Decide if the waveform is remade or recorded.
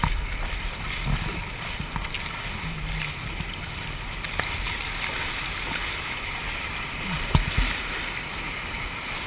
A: recorded